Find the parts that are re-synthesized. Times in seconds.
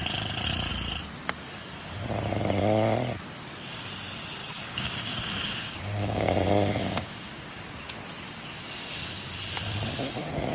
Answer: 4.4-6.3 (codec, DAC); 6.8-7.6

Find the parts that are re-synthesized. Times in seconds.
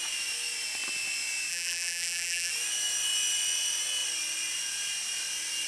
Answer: 1.5-2.5 (vocoder, BigVGAN v2)